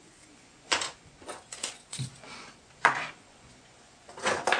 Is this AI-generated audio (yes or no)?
yes